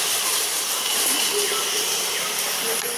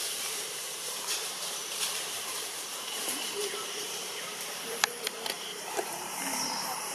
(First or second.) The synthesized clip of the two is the second